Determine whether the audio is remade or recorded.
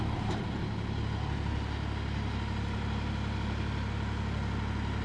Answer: recorded